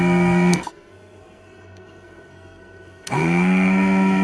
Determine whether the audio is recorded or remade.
remade